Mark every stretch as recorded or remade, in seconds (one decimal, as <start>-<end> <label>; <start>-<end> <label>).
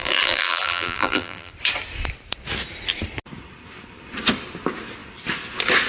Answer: 0.0-1.5 remade; 1.5-5.9 recorded